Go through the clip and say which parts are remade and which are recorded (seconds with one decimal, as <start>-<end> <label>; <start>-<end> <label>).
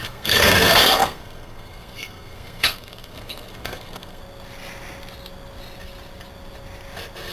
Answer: 0.0-4.2 remade; 4.2-7.3 recorded